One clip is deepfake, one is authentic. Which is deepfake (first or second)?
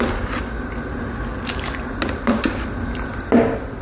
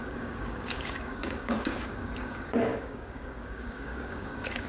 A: second